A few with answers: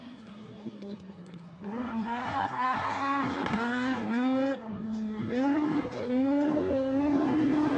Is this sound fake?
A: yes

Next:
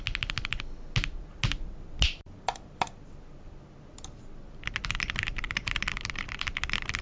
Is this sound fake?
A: no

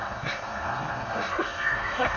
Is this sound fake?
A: yes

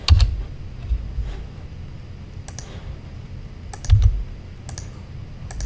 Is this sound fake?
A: no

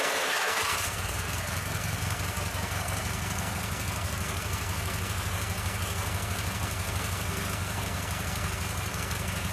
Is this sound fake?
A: yes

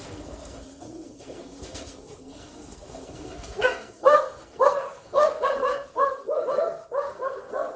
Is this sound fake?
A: yes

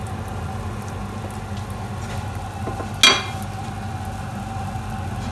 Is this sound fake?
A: no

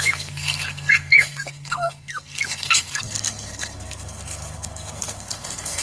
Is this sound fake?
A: yes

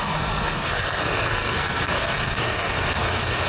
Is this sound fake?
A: yes